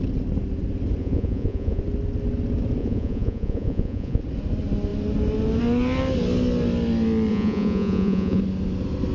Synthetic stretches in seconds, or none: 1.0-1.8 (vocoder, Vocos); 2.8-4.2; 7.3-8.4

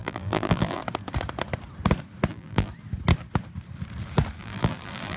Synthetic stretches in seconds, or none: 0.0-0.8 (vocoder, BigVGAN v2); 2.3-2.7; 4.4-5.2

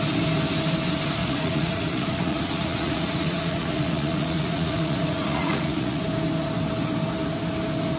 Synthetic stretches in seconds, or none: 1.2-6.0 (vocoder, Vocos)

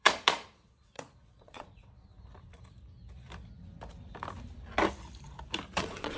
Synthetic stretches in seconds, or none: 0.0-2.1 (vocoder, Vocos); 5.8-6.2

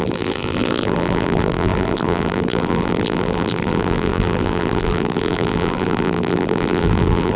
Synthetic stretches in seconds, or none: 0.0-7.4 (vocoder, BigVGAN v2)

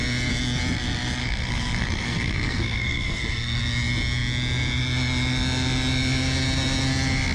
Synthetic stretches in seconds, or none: 1.2-3.6 (codec, SNAC)

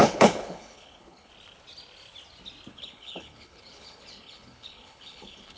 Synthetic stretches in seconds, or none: 0.0-1.3 (codec, HILCodec); 2.7-5.6

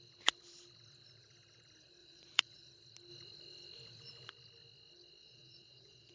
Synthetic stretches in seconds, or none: 2.0-2.7 (vocoder, Vocos); 5.2-6.1